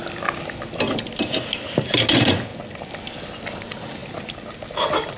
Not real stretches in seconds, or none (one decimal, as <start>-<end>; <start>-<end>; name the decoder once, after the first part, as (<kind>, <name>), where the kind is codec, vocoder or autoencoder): none